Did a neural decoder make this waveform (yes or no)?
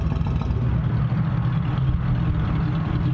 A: no